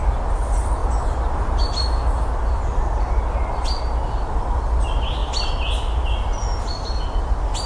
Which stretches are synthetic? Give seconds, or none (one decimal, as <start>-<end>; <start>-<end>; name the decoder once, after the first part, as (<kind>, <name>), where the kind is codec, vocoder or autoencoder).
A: 0.8-1.6 (vocoder, BigVGAN v2)